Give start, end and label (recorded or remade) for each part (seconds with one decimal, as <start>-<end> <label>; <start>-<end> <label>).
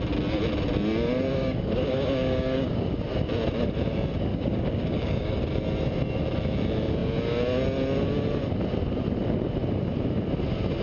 0.0-1.3 recorded; 1.3-3.0 remade; 3.0-4.3 recorded; 4.3-5.4 remade; 5.4-10.8 recorded